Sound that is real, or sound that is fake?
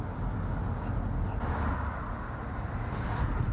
real